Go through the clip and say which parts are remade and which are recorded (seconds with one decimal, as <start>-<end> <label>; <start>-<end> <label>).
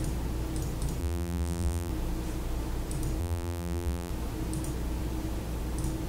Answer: 0.0-1.0 recorded; 1.0-1.9 remade; 1.9-3.2 recorded; 3.2-4.1 remade; 4.1-6.1 recorded